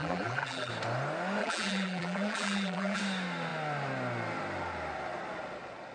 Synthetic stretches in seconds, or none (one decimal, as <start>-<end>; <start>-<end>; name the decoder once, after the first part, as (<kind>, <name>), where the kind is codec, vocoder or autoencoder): 0.0-0.7 (vocoder, BigVGAN v2); 1.4-3.0